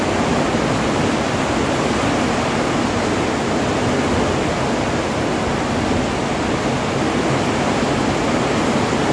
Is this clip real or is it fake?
real